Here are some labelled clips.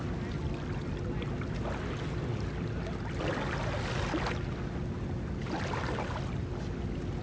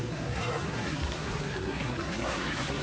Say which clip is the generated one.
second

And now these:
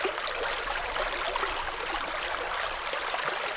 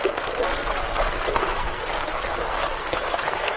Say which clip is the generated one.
second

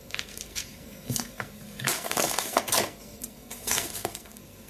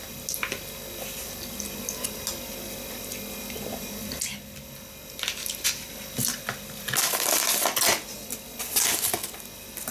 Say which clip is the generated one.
first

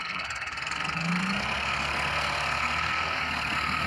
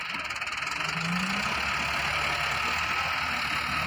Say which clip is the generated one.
first